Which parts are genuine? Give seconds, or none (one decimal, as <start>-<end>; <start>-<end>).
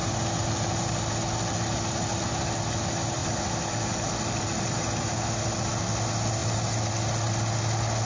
0.0-8.0